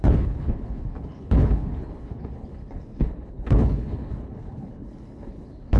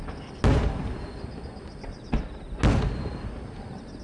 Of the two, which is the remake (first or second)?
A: first